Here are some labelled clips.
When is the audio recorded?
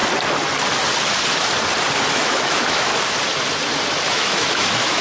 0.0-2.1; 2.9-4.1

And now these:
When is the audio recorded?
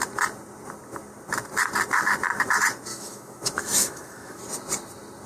0.0-2.9; 4.4-5.3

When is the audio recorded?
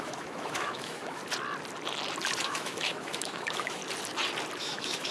1.2-2.4; 3.8-4.6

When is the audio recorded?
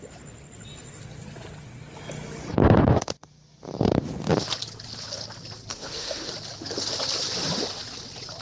0.0-5.7; 6.3-8.4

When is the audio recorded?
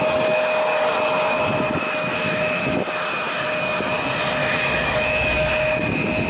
0.0-1.8; 2.7-4.4; 5.5-6.3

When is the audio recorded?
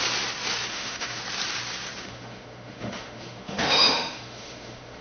0.0-0.7; 1.2-2.0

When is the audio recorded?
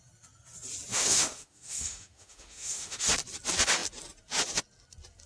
0.0-0.9; 3.1-5.3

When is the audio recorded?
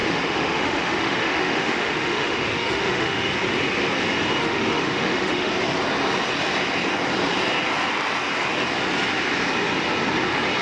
3.3-4.4; 5.5-10.6